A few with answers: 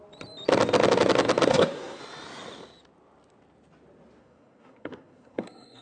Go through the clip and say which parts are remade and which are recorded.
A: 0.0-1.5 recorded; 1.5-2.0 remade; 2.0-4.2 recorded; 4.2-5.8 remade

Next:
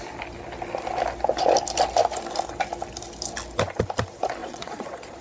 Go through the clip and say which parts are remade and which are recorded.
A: 0.0-4.4 recorded; 4.4-5.2 remade

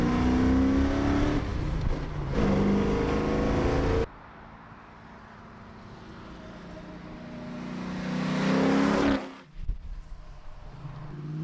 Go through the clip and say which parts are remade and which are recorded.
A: 0.0-11.4 recorded

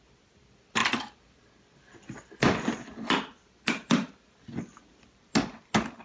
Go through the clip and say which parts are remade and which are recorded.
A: 0.0-6.0 recorded

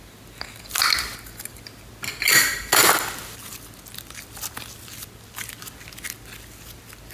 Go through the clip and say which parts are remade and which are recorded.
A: 0.0-7.1 recorded